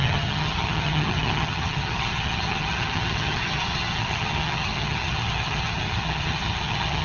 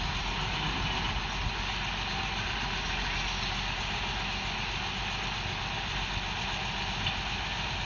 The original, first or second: second